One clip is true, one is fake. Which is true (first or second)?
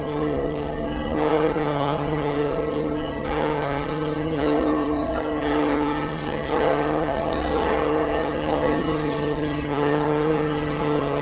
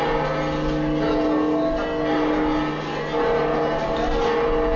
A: second